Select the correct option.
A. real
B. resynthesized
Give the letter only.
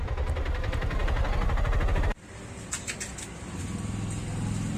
A